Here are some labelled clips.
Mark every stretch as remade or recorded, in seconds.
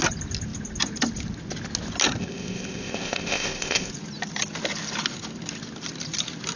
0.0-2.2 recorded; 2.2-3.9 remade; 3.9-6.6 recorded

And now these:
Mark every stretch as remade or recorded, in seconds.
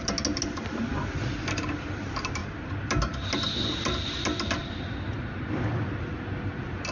0.0-6.9 recorded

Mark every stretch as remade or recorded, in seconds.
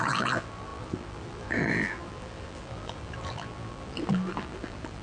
0.0-5.0 remade